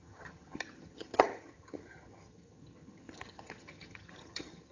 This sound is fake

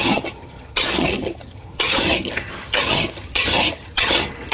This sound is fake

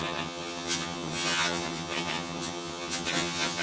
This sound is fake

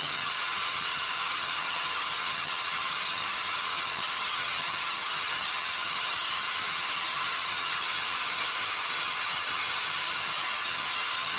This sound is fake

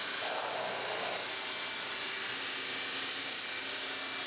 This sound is real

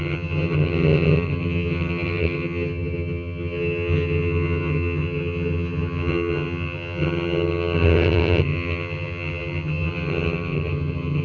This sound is fake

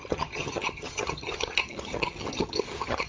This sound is fake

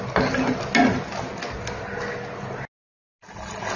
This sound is real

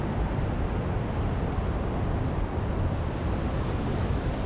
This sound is real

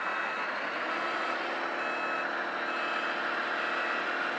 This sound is real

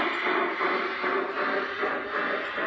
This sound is real